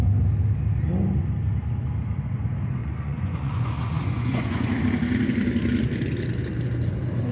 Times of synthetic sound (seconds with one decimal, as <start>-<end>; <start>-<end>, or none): 2.8-4.7